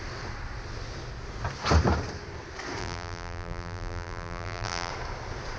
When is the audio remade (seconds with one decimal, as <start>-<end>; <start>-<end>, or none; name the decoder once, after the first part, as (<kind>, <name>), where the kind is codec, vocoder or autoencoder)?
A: 2.8-4.9 (vocoder, BigVGAN v2)